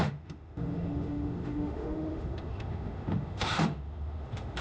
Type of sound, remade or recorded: remade